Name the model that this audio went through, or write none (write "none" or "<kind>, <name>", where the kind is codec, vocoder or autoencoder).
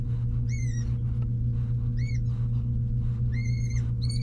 none